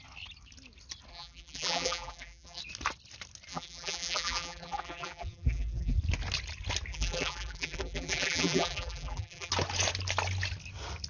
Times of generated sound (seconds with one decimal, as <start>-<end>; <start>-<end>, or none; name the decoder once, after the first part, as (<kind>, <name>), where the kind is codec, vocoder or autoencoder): 1.1-2.6 (vocoder, BigVGAN v2); 3.5-6.0; 6.9-9.5